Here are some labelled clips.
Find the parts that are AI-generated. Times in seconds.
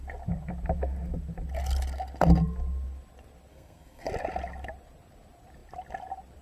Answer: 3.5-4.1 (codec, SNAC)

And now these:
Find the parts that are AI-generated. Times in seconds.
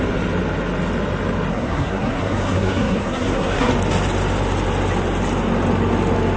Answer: 1.5-3.7 (codec, SNAC)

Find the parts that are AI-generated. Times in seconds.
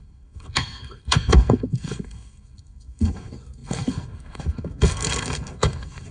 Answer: 0.0-6.1 (codec, SNAC)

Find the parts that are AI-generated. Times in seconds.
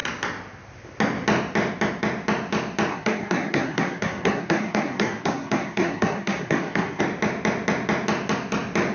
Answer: 2.9-7.0 (codec, SNAC)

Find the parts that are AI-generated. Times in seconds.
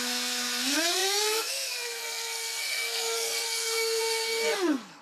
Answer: 0.0-5.0 (codec, SNAC)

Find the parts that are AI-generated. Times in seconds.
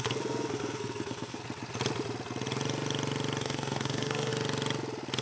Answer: 0.0-1.4 (codec, SNAC); 3.4-4.3